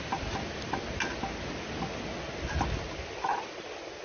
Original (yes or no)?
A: yes